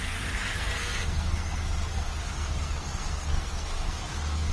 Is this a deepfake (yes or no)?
yes